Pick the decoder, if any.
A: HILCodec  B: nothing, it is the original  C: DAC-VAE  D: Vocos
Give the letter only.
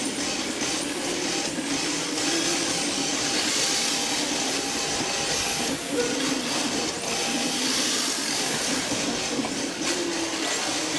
B